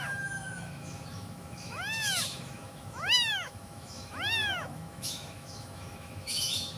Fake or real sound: fake